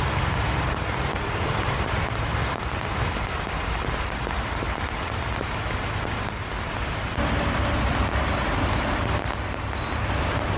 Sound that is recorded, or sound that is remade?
remade